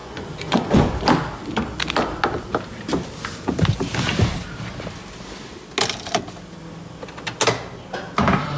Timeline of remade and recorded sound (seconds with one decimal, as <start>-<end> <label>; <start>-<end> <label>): 0.0-1.0 remade; 1.0-8.6 recorded